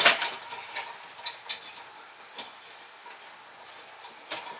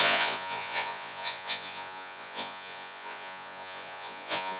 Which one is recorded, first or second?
first